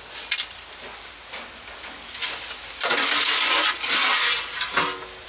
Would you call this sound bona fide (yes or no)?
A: yes